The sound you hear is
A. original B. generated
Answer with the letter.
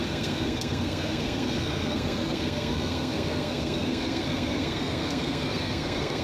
B